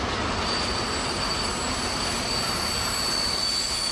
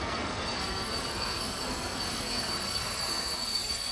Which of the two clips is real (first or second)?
first